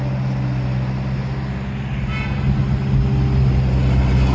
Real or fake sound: real